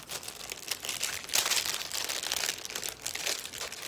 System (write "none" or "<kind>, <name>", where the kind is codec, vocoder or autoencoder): none